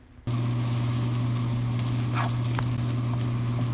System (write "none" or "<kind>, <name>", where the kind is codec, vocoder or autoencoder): none